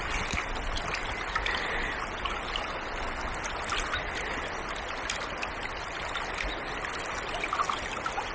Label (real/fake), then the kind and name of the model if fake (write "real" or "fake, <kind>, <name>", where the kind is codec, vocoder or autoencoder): real